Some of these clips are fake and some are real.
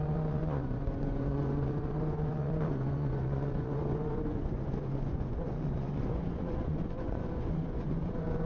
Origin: fake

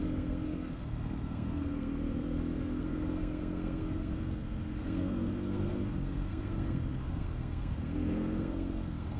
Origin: fake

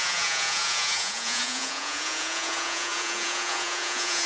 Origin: fake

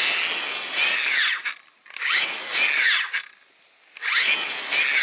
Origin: real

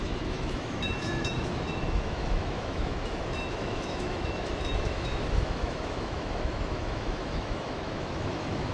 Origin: fake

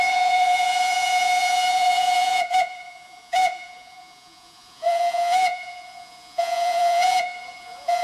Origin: fake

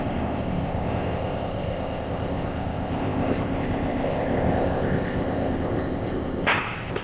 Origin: fake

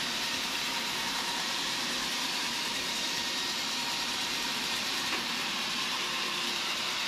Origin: fake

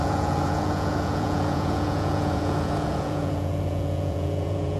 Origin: fake